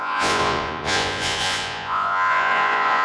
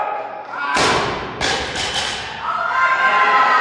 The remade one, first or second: first